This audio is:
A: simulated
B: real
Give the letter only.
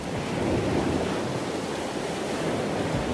B